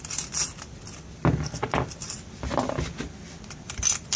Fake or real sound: real